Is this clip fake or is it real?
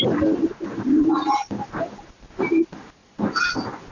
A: real